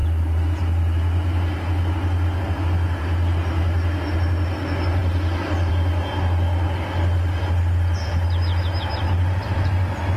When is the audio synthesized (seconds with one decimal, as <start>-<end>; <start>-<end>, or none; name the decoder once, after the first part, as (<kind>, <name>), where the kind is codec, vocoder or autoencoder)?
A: none